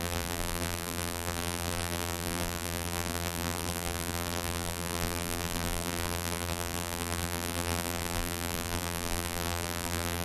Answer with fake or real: fake